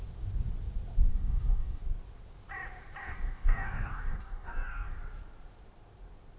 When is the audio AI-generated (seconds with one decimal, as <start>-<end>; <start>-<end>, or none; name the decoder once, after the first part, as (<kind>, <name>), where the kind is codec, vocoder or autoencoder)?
1.1-1.8 (codec, DAC); 3.0-5.0